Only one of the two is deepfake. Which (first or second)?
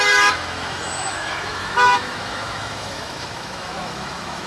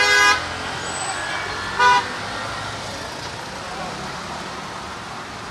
first